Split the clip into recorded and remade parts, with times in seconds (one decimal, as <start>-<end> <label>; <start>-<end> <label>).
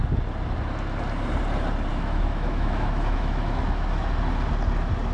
0.0-1.9 recorded; 1.9-4.1 remade; 4.1-5.1 recorded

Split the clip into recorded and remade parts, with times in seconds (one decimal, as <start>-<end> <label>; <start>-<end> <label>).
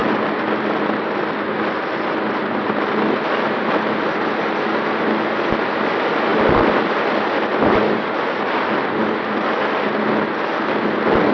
0.0-11.3 recorded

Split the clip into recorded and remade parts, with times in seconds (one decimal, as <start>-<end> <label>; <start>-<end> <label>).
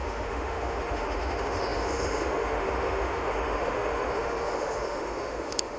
0.0-5.8 remade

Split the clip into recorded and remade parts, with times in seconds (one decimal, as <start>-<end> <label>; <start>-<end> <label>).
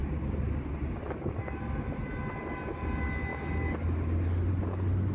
0.0-5.1 recorded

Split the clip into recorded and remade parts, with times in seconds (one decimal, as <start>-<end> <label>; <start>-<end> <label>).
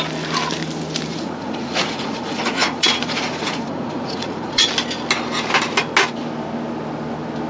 0.0-1.1 recorded; 1.1-4.7 remade; 4.7-7.5 recorded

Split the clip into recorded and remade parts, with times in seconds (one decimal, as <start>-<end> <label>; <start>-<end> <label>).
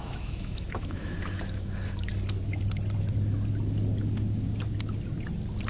0.0-2.1 remade; 2.1-5.7 recorded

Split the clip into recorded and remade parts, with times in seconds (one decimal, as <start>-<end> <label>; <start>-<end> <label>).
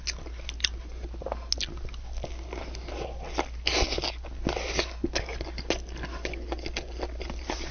0.0-7.7 recorded